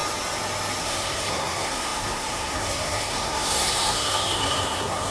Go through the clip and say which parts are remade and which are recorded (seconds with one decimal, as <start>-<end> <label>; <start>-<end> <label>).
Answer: 0.0-0.8 recorded; 0.8-5.1 remade

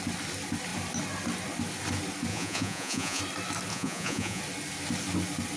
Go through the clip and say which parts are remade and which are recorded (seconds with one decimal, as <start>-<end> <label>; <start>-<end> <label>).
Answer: 0.0-2.3 recorded; 2.3-3.2 remade; 3.2-3.7 recorded; 3.7-4.4 remade; 4.4-5.6 recorded

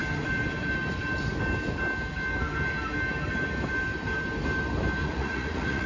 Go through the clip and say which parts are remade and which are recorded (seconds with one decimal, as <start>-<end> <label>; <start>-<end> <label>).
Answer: 0.0-5.0 recorded; 5.0-5.9 remade

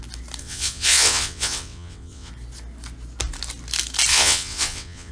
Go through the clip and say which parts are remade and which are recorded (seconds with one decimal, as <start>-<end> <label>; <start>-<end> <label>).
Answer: 0.0-0.4 recorded; 0.4-2.3 remade; 2.3-4.1 recorded; 4.1-5.1 remade